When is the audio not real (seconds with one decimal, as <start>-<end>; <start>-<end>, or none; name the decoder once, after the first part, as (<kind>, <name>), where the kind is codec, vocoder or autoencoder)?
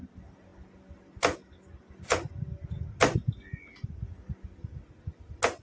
none